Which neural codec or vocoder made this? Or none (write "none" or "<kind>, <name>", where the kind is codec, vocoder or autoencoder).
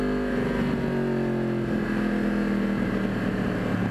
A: none